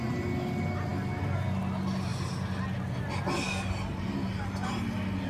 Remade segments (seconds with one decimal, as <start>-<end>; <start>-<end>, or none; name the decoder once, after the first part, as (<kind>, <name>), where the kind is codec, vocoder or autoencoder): none

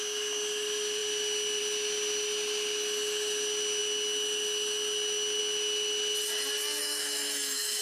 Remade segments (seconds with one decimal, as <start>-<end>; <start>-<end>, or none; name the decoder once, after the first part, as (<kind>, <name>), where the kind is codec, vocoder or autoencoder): 6.8-7.8 (autoencoder, DAC-VAE)

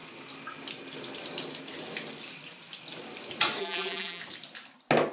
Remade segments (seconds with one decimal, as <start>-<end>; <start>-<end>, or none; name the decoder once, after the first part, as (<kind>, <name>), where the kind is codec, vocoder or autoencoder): 3.6-4.2 (vocoder, BigVGAN v2)

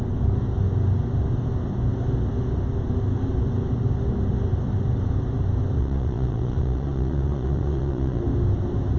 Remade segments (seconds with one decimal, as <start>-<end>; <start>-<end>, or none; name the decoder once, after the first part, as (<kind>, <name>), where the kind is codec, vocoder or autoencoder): 5.8-8.2 (vocoder, Vocos)

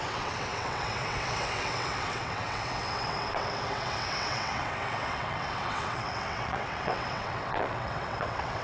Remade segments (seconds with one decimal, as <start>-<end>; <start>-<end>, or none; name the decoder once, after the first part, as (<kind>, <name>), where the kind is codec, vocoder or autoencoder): 0.0-8.6 (vocoder, WaveNeXt)

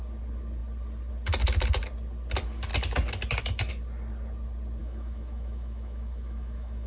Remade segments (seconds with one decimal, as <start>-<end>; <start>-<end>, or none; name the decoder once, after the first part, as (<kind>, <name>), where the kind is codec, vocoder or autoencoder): 4.8-6.9 (autoencoder, DAC-VAE)